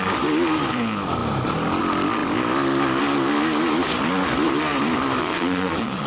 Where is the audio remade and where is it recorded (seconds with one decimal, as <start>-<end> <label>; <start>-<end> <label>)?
0.0-5.2 recorded; 5.2-6.1 remade